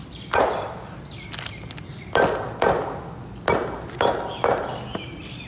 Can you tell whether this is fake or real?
real